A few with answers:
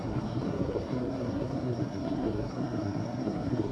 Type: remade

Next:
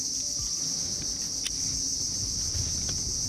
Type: recorded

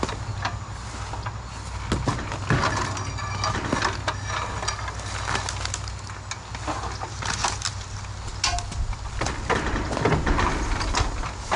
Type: recorded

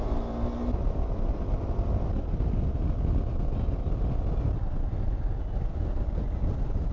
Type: recorded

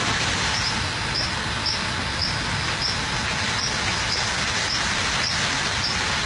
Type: recorded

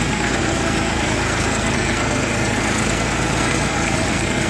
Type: remade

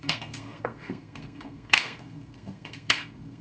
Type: remade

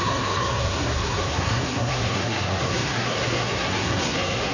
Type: remade